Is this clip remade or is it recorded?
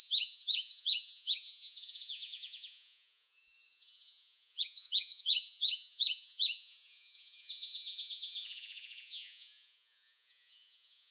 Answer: remade